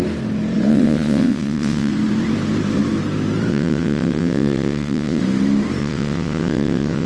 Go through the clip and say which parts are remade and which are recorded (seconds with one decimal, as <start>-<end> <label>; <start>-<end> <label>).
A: 0.0-0.7 recorded; 0.7-1.9 remade; 1.9-3.5 recorded; 3.5-5.2 remade; 5.2-5.8 recorded; 5.8-7.1 remade